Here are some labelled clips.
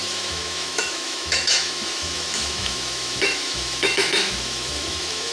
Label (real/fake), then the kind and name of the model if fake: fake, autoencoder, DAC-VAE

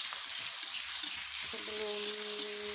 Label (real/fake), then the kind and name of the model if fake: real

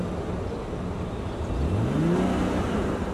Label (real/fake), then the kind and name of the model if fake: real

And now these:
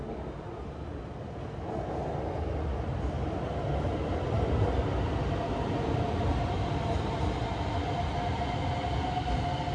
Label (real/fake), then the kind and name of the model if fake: real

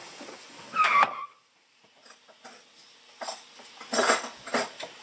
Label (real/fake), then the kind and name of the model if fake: real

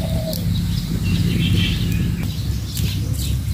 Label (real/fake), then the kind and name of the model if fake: real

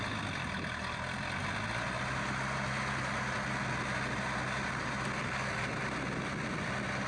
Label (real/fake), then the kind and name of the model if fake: real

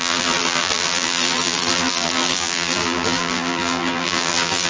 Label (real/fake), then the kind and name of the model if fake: fake, vocoder, BigVGAN v2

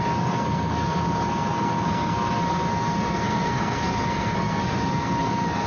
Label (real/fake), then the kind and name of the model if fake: fake, codec, SNAC